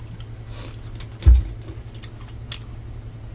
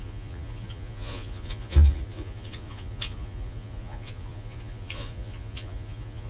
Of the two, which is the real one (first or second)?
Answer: first